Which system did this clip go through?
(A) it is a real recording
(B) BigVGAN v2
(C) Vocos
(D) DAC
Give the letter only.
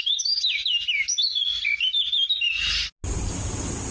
A